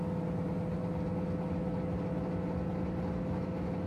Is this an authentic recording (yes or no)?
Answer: yes